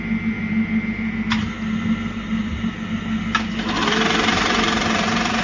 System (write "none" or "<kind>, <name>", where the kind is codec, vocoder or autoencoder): none